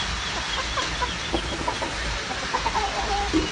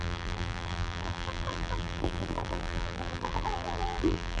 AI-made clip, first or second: second